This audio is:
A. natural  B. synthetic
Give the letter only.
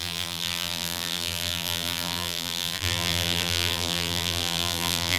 B